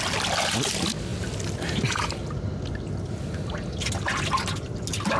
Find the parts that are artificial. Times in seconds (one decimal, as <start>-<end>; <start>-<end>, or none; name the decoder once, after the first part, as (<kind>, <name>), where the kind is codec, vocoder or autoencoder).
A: none

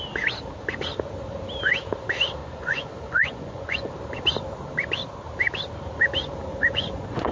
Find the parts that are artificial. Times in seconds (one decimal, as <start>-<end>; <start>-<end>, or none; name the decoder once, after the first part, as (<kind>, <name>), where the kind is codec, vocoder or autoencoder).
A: 2.4-3.9 (vocoder, Vocos); 6.5-7.3